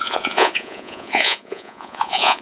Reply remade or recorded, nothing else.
remade